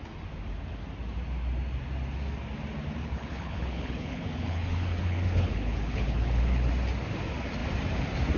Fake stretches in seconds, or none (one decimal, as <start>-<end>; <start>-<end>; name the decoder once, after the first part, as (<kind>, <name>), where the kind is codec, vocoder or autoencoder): 3.0-6.7 (codec, HILCodec)